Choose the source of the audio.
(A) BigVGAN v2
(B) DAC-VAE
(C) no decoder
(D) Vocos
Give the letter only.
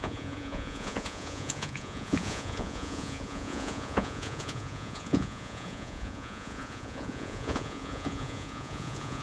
D